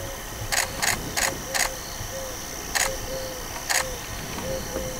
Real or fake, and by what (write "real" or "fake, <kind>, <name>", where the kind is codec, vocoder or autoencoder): real